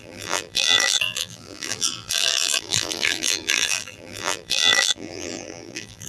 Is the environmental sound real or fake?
fake